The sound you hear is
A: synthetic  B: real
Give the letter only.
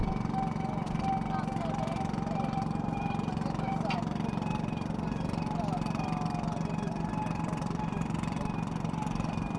B